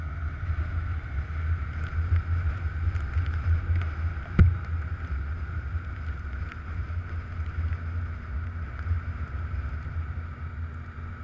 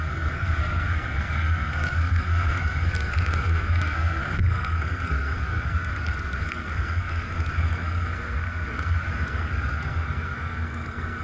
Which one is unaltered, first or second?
first